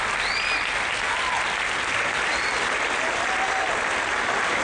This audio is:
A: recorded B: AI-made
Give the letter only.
A